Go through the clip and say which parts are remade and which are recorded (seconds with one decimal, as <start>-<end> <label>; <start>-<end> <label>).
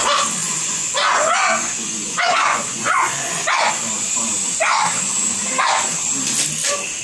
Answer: 0.0-0.4 recorded; 0.4-3.7 remade; 3.7-7.0 recorded